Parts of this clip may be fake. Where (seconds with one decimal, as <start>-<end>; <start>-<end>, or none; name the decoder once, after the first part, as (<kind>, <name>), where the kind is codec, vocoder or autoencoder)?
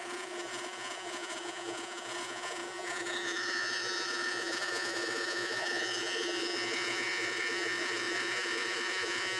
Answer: 0.0-9.4 (vocoder, Vocos)